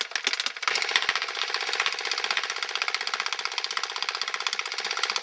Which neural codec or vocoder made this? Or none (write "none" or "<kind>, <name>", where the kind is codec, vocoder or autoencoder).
none